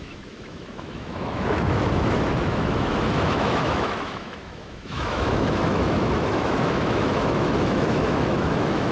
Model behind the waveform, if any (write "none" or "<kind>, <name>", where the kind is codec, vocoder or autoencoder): autoencoder, DAC-VAE